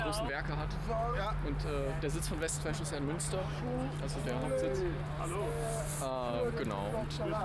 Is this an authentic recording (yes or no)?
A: yes